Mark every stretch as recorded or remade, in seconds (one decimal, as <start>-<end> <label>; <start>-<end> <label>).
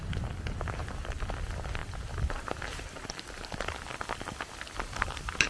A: 0.0-1.8 recorded; 1.8-4.6 remade; 4.6-5.5 recorded